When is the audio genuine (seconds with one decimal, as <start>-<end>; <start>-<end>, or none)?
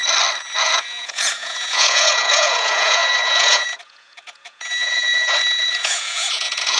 0.0-0.6